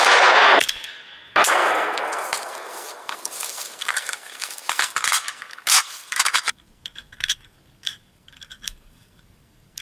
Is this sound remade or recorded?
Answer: remade